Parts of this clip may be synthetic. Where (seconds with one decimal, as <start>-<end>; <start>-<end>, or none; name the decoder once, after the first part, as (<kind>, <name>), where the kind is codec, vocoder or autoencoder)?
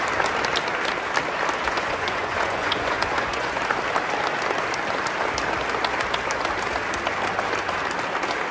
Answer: 1.6-3.6 (vocoder, Vocos)